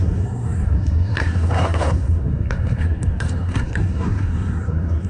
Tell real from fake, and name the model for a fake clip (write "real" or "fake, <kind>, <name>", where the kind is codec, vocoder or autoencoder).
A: fake, codec, SNAC